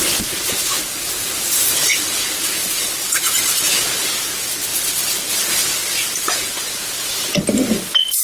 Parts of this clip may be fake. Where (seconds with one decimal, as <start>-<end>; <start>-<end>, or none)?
2.6-3.6